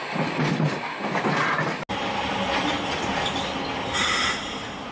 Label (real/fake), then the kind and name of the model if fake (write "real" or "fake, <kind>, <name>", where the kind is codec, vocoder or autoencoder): real